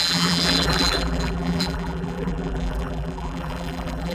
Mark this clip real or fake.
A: fake